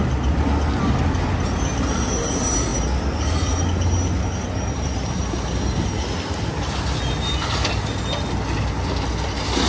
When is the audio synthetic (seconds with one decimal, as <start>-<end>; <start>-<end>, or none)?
none